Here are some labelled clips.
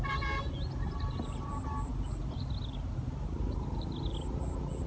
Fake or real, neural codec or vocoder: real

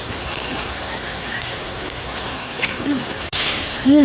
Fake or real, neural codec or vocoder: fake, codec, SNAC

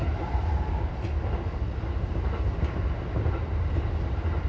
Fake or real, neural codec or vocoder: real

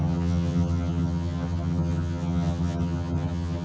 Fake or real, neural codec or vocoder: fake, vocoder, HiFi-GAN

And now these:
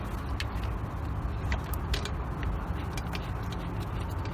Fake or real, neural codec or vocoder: real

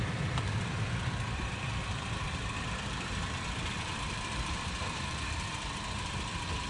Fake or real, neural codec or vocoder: fake, vocoder, BigVGAN v2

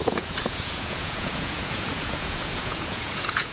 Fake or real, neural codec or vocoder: fake, vocoder, Vocos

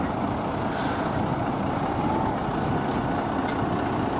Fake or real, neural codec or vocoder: real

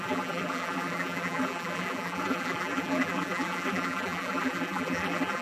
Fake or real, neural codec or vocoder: fake, vocoder, BigVGAN v2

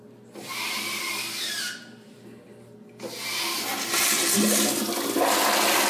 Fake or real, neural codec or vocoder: real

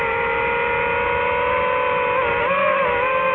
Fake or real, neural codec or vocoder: real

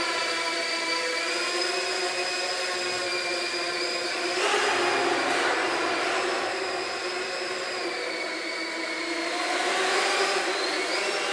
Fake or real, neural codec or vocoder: real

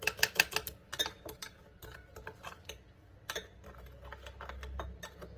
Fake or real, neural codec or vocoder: real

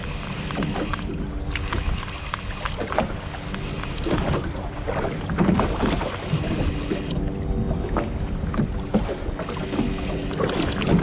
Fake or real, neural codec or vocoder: real